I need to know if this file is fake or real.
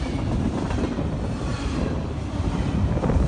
real